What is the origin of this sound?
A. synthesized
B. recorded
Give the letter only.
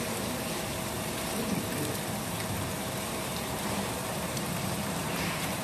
A